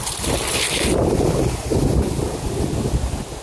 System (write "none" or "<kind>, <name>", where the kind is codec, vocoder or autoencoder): none